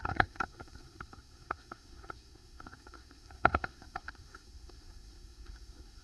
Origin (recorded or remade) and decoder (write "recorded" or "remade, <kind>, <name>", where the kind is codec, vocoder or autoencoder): remade, codec, SNAC